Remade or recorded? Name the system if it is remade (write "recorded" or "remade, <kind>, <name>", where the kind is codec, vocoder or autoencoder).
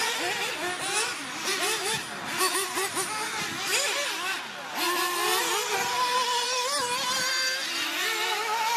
recorded